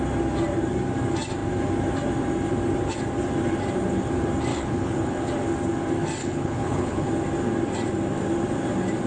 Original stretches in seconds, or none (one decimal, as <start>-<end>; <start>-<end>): 0.0-4.5; 5.2-6.2; 7.1-9.1

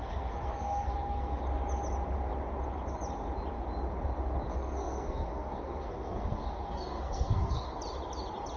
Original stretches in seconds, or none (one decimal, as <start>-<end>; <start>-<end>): 1.4-4.5; 7.8-8.6

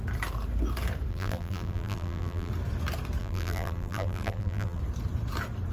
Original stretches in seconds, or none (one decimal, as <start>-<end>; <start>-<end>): 0.0-1.1; 2.5-3.2; 4.8-5.7